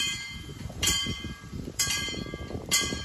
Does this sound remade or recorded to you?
remade